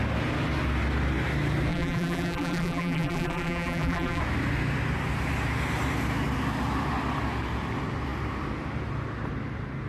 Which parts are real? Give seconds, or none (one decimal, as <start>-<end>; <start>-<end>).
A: 0.0-1.7; 4.2-9.9